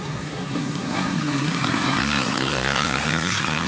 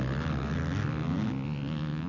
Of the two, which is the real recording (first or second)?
second